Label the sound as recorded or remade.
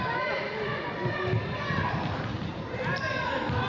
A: recorded